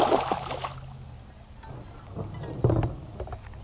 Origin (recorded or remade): recorded